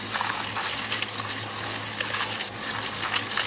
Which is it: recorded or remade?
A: recorded